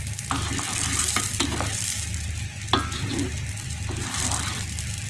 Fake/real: real